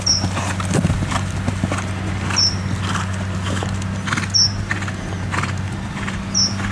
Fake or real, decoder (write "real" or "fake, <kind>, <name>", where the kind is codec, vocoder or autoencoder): real